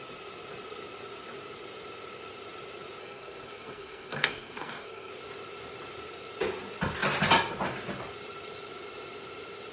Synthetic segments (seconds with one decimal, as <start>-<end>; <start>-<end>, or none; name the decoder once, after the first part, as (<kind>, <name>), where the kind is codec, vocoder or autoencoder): 3.0-5.1 (codec, SNAC)